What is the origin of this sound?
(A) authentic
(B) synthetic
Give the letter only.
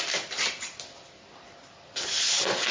A